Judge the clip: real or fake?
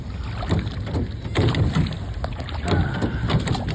real